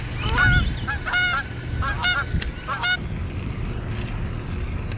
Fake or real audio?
real